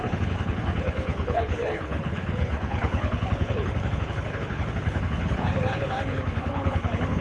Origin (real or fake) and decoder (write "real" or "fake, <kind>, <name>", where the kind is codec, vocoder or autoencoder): fake, codec, HILCodec